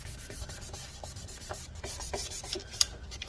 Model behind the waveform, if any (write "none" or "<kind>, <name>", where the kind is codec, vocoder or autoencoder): none